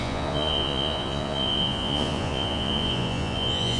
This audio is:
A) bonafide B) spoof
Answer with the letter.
B